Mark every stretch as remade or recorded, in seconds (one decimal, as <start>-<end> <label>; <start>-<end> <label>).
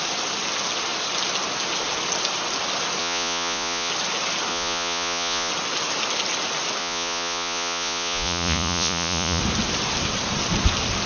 0.0-3.0 recorded; 3.0-3.9 remade; 3.9-4.5 recorded; 4.5-5.5 remade; 5.5-6.8 recorded; 6.8-9.4 remade; 9.4-11.1 recorded